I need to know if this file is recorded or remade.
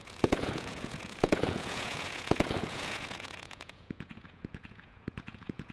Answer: remade